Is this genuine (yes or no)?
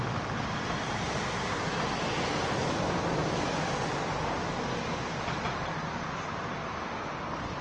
yes